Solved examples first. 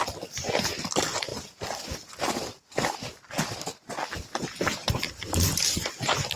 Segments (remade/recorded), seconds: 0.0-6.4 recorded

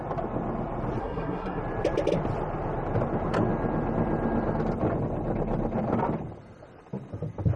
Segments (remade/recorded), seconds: 0.0-1.0 recorded; 1.0-1.6 remade; 1.6-7.6 recorded

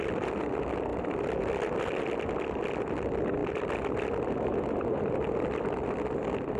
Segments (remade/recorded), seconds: 0.0-6.6 recorded

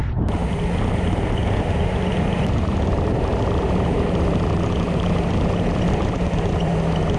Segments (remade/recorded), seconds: 0.0-7.2 recorded

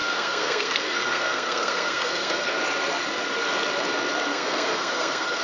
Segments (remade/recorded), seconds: 0.0-2.6 remade; 2.6-4.3 recorded; 4.3-5.4 remade

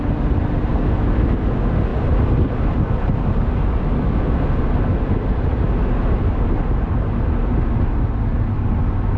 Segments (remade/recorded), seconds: 0.0-9.2 recorded

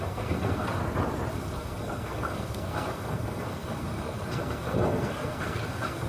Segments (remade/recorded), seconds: 0.0-0.8 remade; 0.8-1.3 recorded; 1.3-6.1 remade

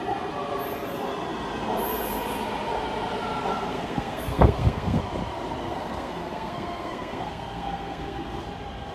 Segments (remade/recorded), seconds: 0.0-3.5 recorded; 3.5-5.0 remade; 5.0-5.6 recorded; 5.6-8.4 remade; 8.4-8.9 recorded